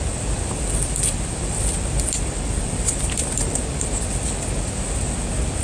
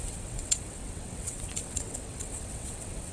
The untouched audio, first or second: first